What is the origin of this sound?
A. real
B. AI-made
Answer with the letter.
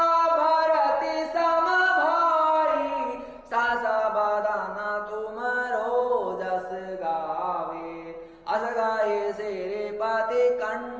A